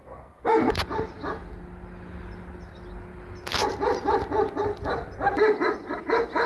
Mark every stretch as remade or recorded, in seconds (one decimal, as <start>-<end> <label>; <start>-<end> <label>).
0.0-0.8 remade; 0.8-6.5 recorded